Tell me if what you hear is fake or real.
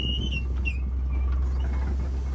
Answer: real